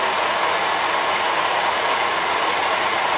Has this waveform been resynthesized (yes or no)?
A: yes